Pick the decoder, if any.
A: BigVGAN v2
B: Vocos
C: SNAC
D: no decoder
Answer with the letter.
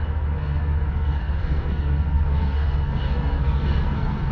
C